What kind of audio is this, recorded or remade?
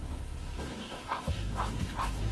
remade